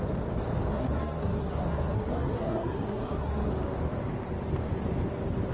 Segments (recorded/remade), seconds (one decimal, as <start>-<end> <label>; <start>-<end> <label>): 0.0-0.7 recorded; 0.7-3.5 remade; 3.5-5.5 recorded